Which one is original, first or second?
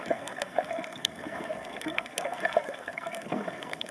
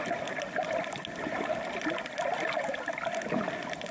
second